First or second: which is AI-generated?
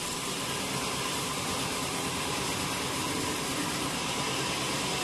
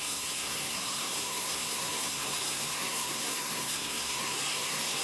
second